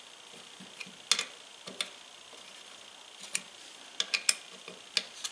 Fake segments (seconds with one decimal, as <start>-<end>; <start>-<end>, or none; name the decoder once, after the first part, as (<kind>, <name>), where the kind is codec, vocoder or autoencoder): none